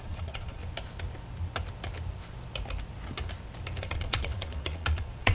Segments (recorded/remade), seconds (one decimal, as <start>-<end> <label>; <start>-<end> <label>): 0.0-0.6 remade; 0.6-3.8 recorded; 3.8-5.3 remade